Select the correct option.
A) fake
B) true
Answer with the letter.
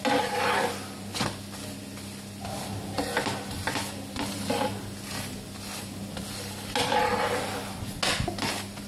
B